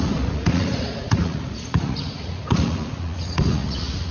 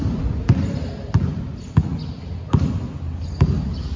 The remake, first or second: first